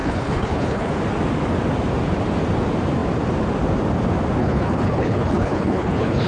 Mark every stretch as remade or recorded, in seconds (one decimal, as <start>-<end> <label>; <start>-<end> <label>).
0.0-0.9 remade; 0.9-4.4 recorded; 4.4-6.3 remade